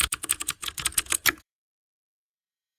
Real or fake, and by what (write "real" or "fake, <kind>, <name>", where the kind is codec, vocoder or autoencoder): fake, vocoder, Vocos